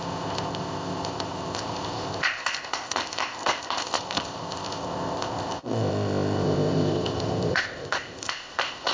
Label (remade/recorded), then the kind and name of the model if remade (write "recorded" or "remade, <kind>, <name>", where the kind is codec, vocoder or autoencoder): remade, codec, ZipCodec